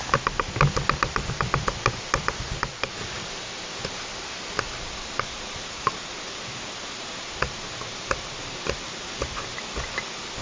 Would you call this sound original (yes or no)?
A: yes